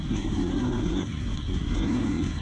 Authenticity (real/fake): fake